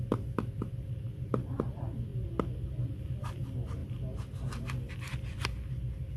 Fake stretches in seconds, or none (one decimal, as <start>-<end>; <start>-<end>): none